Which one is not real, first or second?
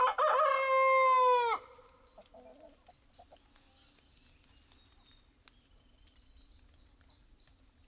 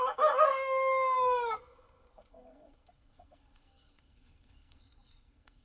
second